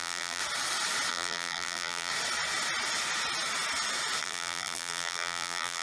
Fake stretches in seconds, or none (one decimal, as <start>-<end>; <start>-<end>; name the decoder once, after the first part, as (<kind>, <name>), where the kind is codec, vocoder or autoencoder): 0.0-0.4 (vocoder, BigVGAN v2); 1.1-2.1; 4.2-5.8